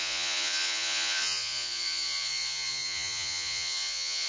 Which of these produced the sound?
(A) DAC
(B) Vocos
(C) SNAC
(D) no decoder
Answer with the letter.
B